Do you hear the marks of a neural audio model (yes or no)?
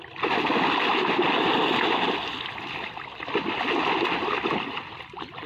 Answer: no